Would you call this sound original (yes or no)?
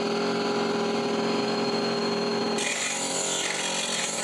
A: yes